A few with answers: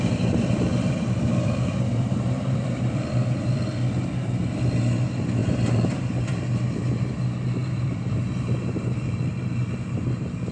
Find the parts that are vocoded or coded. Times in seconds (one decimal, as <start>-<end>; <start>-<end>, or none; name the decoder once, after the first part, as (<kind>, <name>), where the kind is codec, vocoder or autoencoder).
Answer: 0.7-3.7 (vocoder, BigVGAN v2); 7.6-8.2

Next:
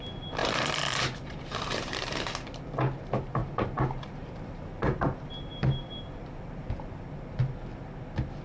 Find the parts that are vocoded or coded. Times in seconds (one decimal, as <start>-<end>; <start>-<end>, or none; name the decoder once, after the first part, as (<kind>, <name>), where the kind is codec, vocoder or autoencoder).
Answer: 0.4-2.3 (vocoder, BigVGAN v2); 3.4-7.0

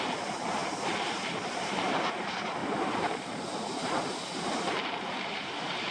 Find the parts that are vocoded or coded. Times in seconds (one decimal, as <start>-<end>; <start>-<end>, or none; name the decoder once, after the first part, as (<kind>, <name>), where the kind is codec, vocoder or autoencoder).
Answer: 0.0-5.9 (vocoder, BigVGAN v2)

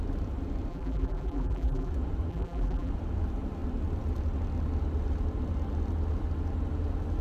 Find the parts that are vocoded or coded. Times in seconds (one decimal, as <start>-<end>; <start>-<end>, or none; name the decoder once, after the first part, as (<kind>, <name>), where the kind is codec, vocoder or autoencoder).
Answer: 0.7-1.9 (vocoder, BigVGAN v2); 2.3-2.9

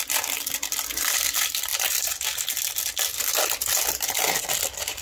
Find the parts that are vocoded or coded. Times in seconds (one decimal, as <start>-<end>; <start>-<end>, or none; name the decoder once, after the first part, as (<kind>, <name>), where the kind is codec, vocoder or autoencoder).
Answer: none

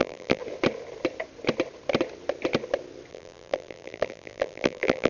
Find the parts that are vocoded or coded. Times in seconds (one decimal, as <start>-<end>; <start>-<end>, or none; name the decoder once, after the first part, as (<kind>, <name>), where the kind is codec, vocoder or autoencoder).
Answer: 0.0-0.4 (vocoder, BigVGAN v2); 3.1-5.1

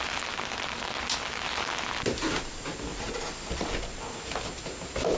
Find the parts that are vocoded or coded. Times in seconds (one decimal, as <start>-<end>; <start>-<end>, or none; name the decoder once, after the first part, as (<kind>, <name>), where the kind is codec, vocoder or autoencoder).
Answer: 2.9-4.0 (vocoder, BigVGAN v2)